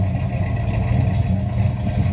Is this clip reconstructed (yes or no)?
no